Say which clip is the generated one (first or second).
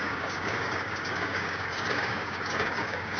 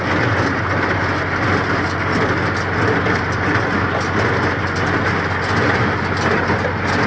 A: first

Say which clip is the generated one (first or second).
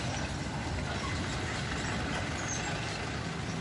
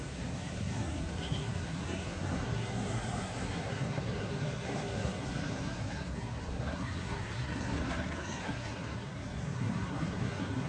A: second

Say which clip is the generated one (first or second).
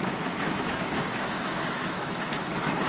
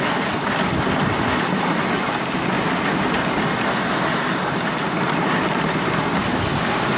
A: first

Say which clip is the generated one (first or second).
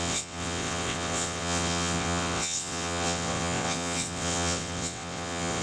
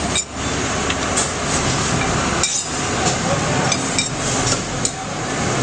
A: first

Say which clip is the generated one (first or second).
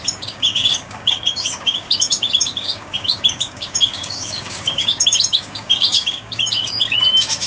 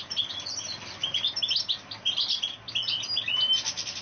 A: first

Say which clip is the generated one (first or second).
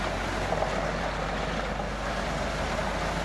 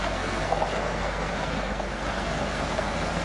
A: second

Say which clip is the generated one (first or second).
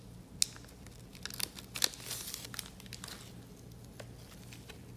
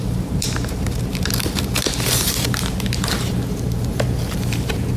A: second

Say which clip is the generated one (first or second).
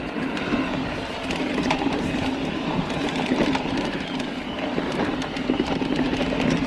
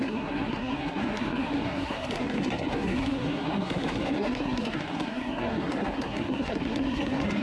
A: second